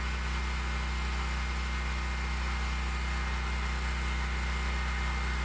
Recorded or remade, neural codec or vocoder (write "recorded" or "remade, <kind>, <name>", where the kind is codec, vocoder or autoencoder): recorded